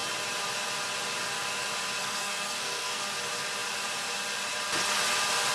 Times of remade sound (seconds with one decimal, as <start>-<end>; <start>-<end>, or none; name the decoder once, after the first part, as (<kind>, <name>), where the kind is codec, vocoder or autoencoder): 2.0-3.0 (codec, SNAC)